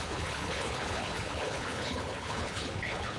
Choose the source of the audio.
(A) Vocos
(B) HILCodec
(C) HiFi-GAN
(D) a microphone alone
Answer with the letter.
B